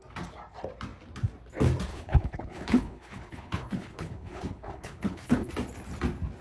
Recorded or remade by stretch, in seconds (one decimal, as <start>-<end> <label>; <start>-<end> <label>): 0.0-1.9 recorded; 1.9-5.5 remade; 5.5-6.4 recorded